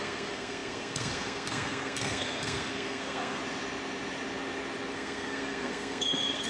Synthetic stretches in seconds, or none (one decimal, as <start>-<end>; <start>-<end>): 0.0-3.4; 4.9-6.5